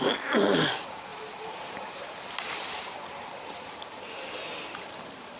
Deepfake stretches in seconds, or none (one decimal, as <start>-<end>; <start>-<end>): 1.1-4.3